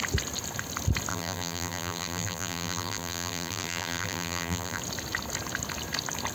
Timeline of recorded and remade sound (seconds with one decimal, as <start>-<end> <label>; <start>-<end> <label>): 0.0-1.1 recorded; 1.1-4.8 remade; 4.8-6.3 recorded

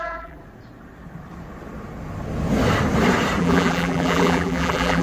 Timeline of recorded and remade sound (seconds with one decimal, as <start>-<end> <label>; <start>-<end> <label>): 0.0-0.4 remade; 0.4-3.4 recorded; 3.4-5.0 remade

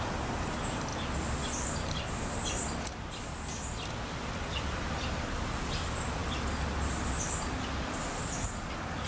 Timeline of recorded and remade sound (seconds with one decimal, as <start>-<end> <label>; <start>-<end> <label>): 0.0-9.1 recorded

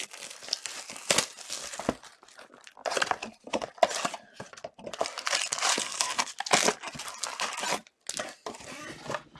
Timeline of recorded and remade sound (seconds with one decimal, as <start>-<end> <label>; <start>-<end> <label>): 0.0-5.7 recorded; 5.7-6.3 remade; 6.3-9.4 recorded

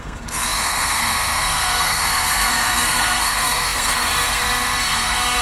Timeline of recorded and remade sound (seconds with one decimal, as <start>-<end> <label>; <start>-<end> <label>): 0.0-5.4 remade

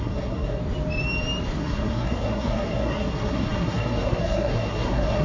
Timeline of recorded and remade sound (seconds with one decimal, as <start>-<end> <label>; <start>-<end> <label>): 0.0-0.6 remade; 0.6-1.6 recorded; 1.6-5.2 remade

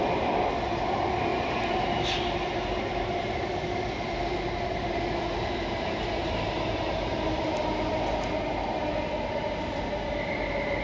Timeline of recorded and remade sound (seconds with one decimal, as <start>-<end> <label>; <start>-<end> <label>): 0.0-10.8 recorded